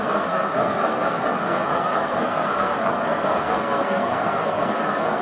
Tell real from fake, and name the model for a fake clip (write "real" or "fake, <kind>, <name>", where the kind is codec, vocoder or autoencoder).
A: fake, codec, SNAC